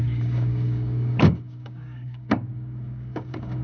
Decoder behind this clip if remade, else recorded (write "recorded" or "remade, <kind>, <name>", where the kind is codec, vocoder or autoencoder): remade, codec, DAC